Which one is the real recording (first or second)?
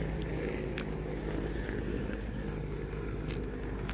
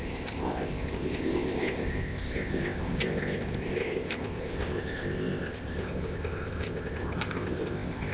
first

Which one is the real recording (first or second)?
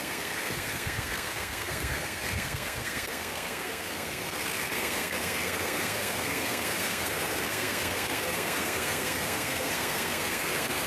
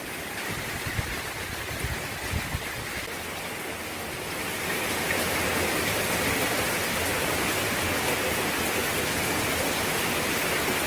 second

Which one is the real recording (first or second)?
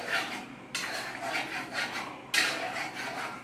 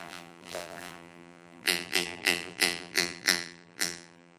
first